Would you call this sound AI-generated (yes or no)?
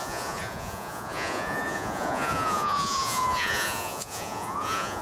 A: yes